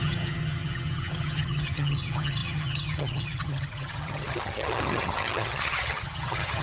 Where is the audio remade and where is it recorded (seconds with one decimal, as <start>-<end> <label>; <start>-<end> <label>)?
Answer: 0.0-6.6 remade

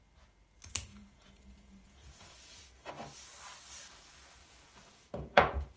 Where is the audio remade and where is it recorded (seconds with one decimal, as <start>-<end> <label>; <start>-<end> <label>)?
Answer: 0.0-0.9 recorded; 0.9-2.9 remade; 2.9-4.4 recorded; 4.4-5.8 remade